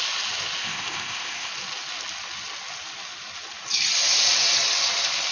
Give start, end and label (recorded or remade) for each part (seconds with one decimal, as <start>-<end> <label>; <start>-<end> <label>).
0.0-0.6 recorded; 0.6-1.5 remade; 1.5-5.3 recorded

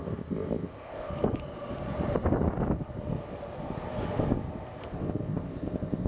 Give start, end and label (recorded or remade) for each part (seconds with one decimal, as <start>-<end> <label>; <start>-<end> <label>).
0.0-1.1 remade; 1.1-4.8 recorded; 4.8-6.1 remade